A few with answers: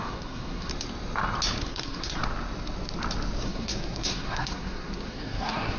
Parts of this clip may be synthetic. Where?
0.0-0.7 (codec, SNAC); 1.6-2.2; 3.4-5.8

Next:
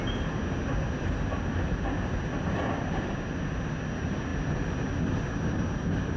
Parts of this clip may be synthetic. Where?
none

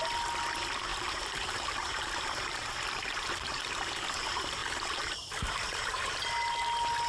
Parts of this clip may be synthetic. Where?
0.9-3.9 (vocoder, BigVGAN v2); 4.6-6.1

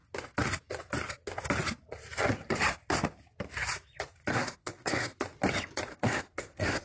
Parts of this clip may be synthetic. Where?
4.3-5.2 (codec, SNAC); 5.9-6.8

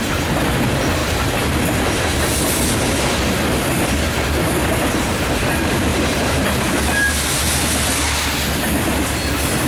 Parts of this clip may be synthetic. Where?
none

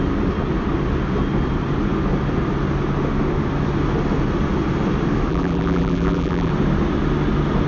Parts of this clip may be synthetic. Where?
5.3-6.5 (vocoder, BigVGAN v2)